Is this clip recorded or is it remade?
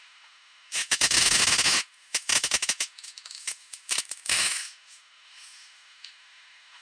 remade